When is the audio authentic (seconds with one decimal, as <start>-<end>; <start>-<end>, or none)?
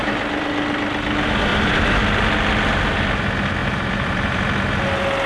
0.0-1.5; 2.0-3.6; 4.4-5.3